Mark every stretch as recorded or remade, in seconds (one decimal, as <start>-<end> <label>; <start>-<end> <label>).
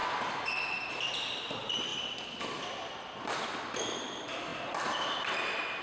0.0-5.8 recorded